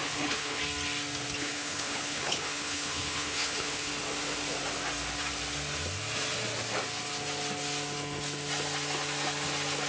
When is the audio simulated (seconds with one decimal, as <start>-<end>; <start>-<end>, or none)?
0.0-0.6; 1.4-3.9